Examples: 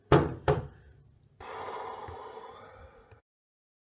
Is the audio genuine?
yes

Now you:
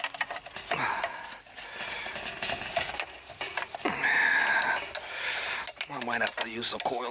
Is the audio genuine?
yes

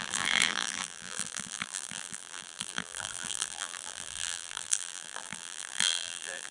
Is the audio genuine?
no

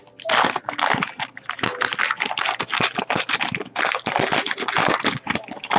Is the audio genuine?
yes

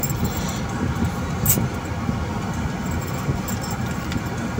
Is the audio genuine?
yes